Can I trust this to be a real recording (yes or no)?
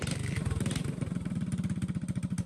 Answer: yes